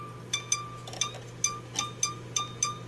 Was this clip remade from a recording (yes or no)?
no